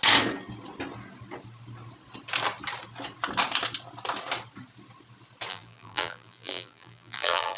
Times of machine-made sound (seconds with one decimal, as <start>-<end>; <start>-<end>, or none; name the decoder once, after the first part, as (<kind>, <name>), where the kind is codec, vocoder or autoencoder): 5.5-7.6 (vocoder, BigVGAN v2)

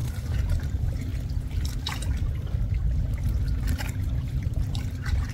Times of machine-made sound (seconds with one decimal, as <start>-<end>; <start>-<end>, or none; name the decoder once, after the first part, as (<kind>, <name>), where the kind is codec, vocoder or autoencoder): 0.6-1.1 (vocoder, BigVGAN v2); 3.6-5.3

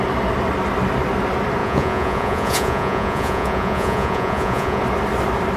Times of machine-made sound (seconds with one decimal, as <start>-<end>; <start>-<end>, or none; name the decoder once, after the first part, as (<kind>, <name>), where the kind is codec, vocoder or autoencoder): 1.6-4.8 (vocoder, Vocos)